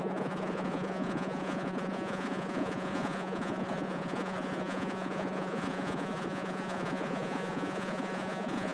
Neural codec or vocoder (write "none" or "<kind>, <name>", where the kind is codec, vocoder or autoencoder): vocoder, Vocos